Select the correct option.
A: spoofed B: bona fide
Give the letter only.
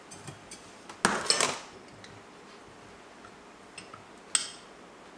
B